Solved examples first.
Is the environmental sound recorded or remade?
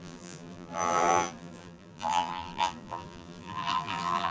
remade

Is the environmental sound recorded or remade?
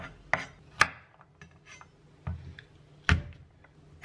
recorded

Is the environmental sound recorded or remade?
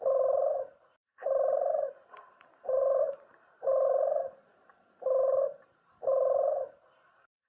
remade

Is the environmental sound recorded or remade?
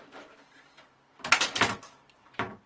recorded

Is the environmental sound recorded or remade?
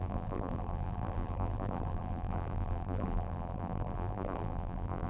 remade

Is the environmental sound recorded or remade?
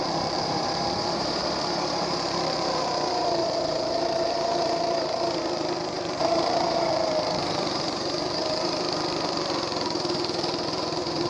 remade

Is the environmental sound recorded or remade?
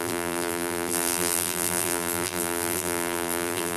remade